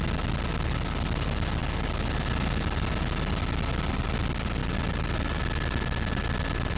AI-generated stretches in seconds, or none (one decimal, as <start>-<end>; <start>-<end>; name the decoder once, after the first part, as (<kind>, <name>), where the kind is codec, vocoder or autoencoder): none